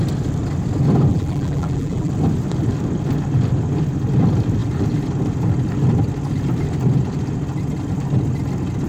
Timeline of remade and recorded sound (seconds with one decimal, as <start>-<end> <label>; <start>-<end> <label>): 0.0-1.1 recorded; 1.1-2.1 remade; 2.1-8.9 recorded